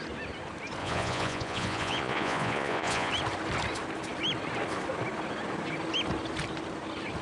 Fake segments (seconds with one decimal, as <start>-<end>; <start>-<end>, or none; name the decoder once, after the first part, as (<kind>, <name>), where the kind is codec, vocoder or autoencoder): 0.8-3.1 (vocoder, Vocos)